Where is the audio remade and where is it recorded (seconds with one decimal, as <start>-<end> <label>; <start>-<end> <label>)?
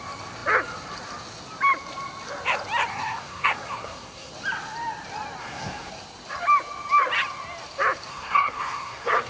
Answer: 0.0-2.9 recorded; 2.9-4.3 remade; 4.3-5.4 recorded; 5.4-5.9 remade; 5.9-8.1 recorded; 8.1-9.3 remade